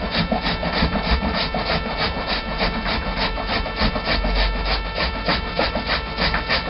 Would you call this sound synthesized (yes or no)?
no